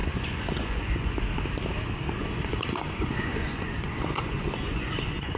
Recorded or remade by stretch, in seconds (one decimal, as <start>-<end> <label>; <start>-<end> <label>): 0.0-1.2 remade; 1.2-2.2 recorded; 2.2-5.4 remade